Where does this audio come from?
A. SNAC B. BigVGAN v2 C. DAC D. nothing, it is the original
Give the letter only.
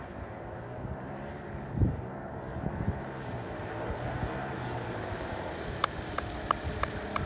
B